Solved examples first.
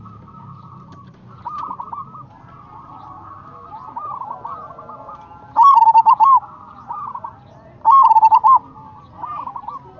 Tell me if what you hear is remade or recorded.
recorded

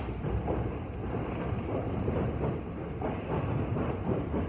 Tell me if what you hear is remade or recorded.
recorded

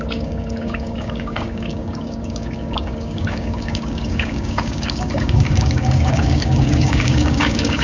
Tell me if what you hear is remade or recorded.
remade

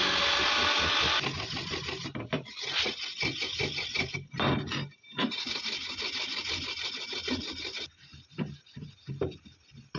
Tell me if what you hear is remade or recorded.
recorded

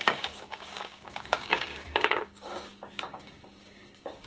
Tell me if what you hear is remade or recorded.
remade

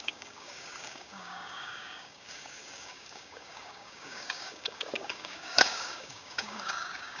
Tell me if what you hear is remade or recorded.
remade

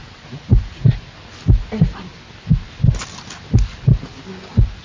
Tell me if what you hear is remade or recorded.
recorded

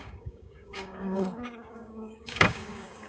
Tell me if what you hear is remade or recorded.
remade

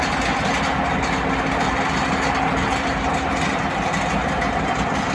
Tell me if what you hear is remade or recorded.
recorded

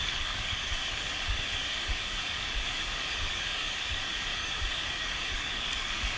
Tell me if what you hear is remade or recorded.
remade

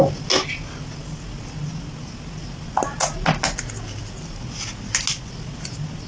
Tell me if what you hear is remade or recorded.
recorded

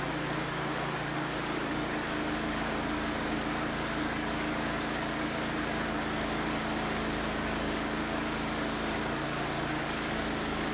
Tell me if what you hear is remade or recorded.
remade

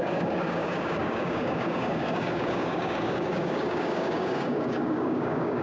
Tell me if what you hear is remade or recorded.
remade